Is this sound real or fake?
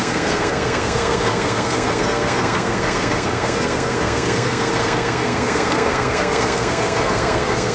fake